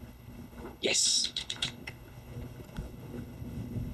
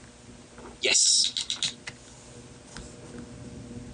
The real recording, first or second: second